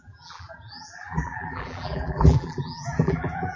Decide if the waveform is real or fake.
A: fake